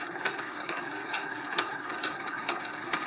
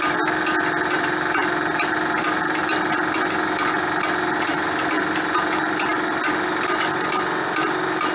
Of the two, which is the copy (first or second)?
first